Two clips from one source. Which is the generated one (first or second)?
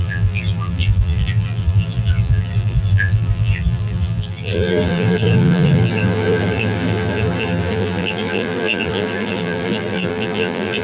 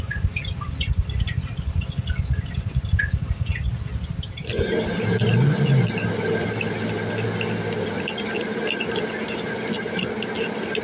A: first